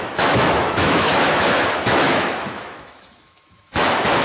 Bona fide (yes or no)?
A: no